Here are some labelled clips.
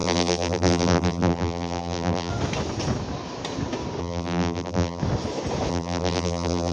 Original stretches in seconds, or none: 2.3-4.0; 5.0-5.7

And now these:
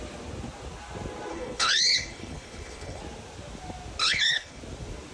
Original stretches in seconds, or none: 0.0-1.3; 3.0-4.0; 4.6-5.1

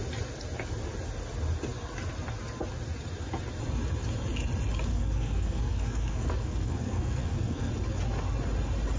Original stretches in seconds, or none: 0.0-4.9; 7.7-9.0